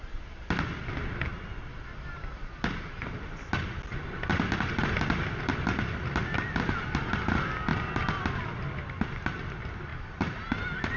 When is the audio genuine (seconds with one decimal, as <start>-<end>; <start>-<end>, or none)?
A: 0.0-1.3; 2.5-9.9; 10.5-11.0